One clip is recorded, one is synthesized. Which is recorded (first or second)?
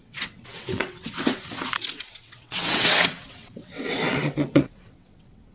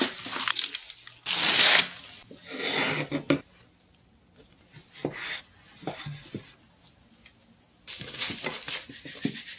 second